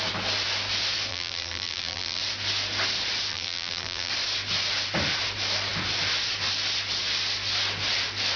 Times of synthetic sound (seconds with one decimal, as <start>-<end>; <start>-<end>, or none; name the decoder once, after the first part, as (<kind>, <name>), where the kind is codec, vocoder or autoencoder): 1.1-2.2 (vocoder, BigVGAN v2); 3.3-4.1